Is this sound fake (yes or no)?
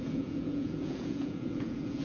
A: yes